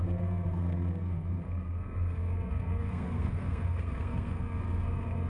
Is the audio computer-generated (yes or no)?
yes